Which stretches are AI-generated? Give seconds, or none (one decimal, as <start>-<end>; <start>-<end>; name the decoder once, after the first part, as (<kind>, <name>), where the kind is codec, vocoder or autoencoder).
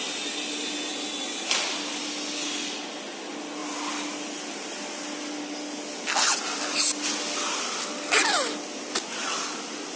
none